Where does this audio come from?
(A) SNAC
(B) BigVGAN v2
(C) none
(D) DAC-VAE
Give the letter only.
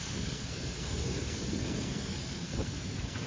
A